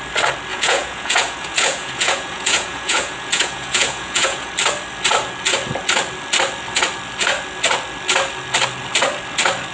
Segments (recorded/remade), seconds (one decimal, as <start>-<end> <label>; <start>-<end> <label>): 0.0-0.5 recorded; 0.5-4.5 remade; 4.5-9.7 recorded